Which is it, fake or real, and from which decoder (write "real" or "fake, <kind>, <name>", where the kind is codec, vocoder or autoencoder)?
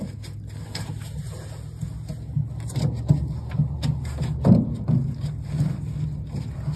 real